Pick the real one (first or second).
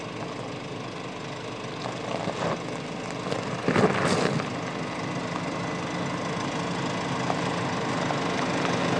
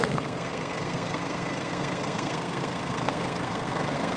first